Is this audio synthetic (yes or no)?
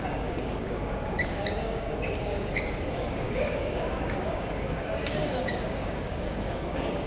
yes